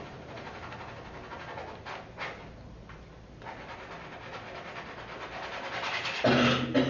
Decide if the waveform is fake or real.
real